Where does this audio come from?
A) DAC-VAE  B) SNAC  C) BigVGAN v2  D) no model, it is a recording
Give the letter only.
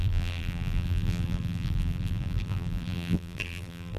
C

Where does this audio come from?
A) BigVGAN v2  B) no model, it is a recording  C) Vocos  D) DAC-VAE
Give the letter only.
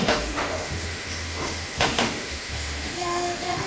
D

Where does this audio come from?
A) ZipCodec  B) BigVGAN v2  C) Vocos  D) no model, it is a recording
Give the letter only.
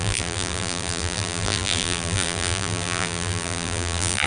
B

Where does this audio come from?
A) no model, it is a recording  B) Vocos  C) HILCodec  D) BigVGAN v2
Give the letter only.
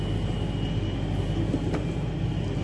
A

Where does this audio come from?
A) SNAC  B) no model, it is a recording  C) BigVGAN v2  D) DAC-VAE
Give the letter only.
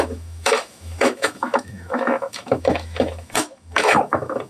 D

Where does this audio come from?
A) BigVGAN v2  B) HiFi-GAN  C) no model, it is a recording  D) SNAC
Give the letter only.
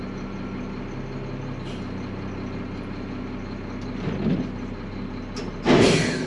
C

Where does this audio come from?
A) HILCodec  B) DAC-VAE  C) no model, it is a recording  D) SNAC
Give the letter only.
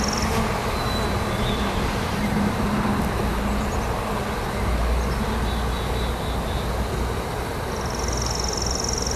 C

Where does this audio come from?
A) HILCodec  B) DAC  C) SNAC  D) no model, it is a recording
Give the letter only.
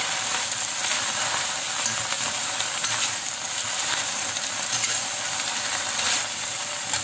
D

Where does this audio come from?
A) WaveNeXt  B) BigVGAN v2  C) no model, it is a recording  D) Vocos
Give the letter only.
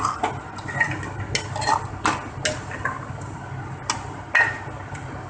C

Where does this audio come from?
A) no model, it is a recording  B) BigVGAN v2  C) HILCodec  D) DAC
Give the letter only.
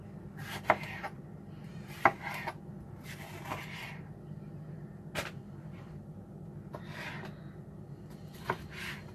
A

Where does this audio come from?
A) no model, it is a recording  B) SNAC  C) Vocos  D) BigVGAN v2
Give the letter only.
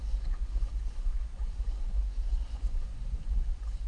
C